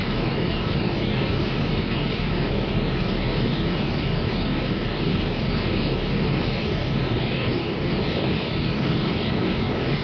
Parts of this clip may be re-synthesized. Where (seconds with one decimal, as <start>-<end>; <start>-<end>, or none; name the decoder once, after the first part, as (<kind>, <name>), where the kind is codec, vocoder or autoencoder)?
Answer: 0.0-10.0 (codec, DAC)